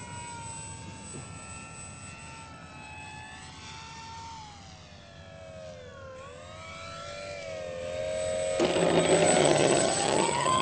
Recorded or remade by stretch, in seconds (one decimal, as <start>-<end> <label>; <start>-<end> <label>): 0.0-9.4 recorded; 9.4-10.6 remade